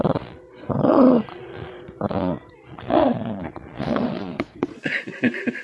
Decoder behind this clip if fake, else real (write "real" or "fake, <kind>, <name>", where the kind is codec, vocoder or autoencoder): fake, vocoder, Vocos